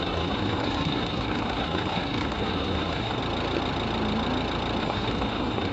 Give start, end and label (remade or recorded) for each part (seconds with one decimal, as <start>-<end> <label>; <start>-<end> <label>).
0.0-3.2 remade; 3.2-4.8 recorded; 4.8-5.7 remade